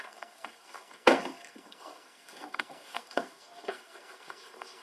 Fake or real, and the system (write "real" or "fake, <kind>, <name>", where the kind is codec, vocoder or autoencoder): fake, codec, SNAC